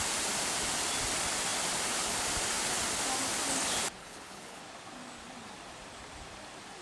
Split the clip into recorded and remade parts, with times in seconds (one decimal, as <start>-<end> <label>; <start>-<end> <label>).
0.0-4.0 recorded; 4.0-4.6 remade; 4.6-6.8 recorded